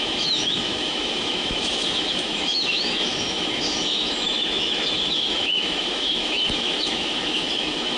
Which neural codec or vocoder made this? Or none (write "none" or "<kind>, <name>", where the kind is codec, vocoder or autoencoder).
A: autoencoder, DAC-VAE